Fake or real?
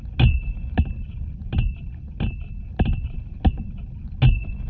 real